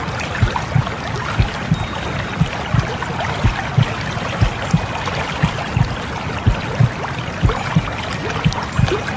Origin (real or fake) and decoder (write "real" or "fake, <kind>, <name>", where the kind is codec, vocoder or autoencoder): real